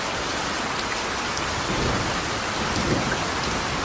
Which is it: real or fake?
real